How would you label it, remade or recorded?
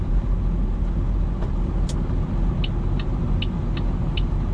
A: recorded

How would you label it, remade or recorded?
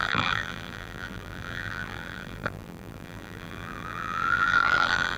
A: remade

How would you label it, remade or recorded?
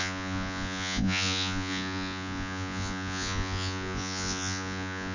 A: remade